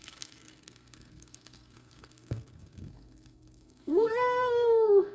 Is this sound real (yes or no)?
no